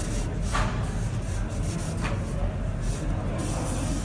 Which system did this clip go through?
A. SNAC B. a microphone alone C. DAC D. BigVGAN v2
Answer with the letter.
B